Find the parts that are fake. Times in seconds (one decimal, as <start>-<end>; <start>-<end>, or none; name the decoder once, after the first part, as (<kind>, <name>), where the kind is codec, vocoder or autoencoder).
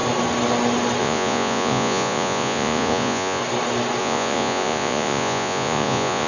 1.0-3.4 (vocoder, Vocos); 4.0-6.3